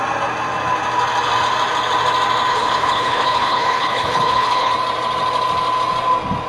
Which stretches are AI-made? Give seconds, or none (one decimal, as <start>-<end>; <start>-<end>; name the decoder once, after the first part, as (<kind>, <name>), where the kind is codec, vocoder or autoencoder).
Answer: 2.5-4.7 (codec, HILCodec)